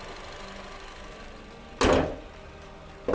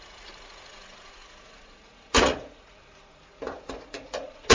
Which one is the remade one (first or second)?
second